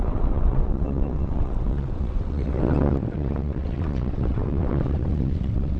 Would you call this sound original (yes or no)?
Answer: no